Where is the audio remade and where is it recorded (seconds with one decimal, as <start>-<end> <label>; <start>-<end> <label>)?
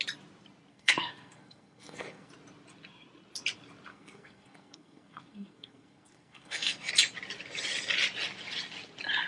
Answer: 0.0-0.7 recorded; 0.7-2.3 remade; 2.3-3.9 recorded; 3.9-6.9 remade; 6.9-9.3 recorded